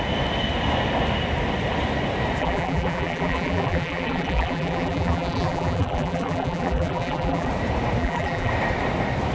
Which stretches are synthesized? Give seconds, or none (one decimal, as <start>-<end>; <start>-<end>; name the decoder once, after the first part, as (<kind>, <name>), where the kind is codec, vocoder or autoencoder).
2.4-7.5 (vocoder, BigVGAN v2); 8.0-8.5